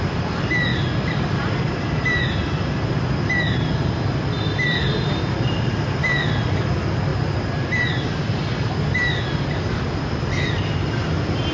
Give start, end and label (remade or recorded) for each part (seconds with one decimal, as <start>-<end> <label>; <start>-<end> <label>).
0.0-11.5 recorded